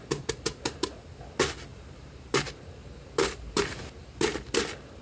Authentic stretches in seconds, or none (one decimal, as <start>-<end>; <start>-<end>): 0.0-1.7; 2.4-2.8; 3.6-4.0; 4.5-5.0